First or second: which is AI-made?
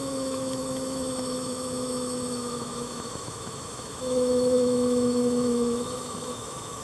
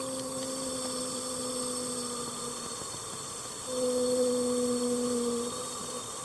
first